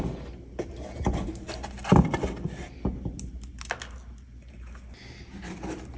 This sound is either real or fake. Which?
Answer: real